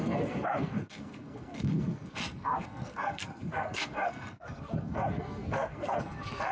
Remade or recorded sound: remade